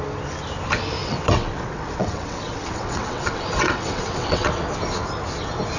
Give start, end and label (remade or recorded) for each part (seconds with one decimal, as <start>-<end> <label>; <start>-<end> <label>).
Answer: 0.0-1.0 recorded; 1.0-4.5 remade; 4.5-5.8 recorded